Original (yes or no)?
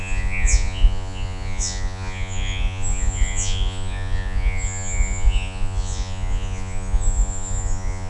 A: no